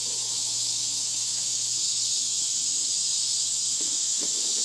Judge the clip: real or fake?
fake